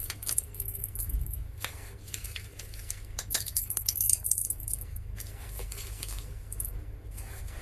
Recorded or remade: remade